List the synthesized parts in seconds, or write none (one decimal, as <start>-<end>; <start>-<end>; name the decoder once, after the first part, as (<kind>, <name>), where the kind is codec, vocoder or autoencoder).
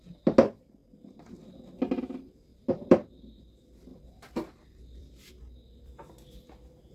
2.5-3.4 (vocoder, BigVGAN v2); 3.9-5.3